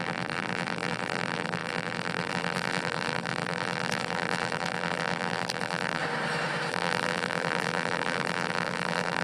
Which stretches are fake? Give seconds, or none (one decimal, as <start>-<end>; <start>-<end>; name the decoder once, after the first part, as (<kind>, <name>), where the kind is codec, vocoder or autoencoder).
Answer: 0.0-6.0 (vocoder, BigVGAN v2); 6.7-9.2